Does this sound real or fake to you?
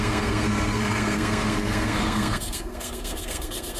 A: fake